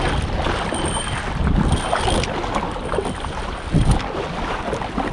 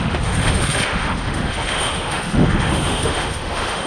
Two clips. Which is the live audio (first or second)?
first